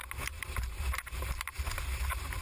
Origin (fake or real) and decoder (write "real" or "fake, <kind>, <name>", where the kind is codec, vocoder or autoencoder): real